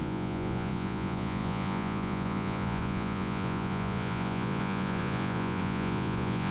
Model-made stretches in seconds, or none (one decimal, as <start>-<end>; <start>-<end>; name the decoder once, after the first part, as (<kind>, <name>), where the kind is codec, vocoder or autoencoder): 0.0-6.5 (vocoder, Vocos)